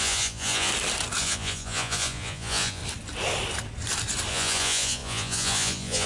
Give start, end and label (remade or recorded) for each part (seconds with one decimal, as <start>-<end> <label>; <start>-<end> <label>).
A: 0.0-0.7 remade; 0.7-1.2 recorded; 1.2-2.8 remade; 2.8-4.3 recorded; 4.3-6.1 remade